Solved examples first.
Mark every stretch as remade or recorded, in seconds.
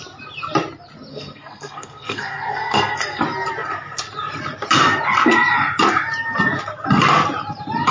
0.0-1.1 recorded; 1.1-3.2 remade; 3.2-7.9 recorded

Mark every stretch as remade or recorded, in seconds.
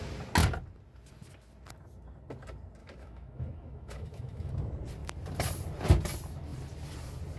0.0-2.8 recorded; 2.8-4.5 remade; 4.5-7.4 recorded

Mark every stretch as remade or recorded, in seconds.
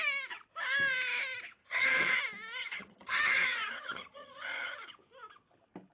0.0-1.6 recorded; 1.6-2.2 remade; 2.2-2.6 recorded; 2.6-4.9 remade; 4.9-5.9 recorded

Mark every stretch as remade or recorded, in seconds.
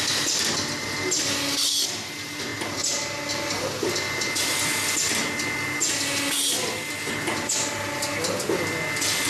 0.0-9.3 recorded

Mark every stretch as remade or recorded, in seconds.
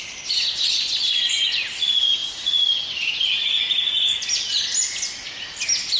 0.0-6.0 recorded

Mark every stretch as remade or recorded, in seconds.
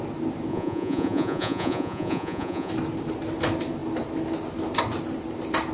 0.0-0.5 recorded; 0.5-2.7 remade; 2.7-5.7 recorded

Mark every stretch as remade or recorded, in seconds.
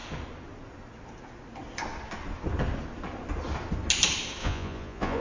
0.0-4.4 recorded; 4.4-5.2 remade